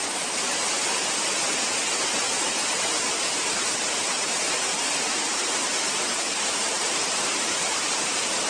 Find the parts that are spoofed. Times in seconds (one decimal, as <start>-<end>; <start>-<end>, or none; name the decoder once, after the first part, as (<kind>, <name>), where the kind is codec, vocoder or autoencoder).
0.0-0.5 (vocoder, BigVGAN v2); 2.9-8.5